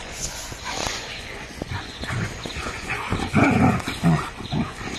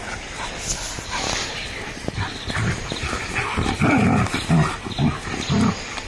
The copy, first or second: first